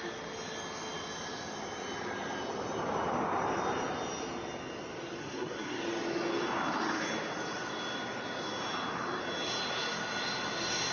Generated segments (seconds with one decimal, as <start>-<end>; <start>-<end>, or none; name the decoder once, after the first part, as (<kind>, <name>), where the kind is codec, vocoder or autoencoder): 5.2-5.8 (codec, SNAC)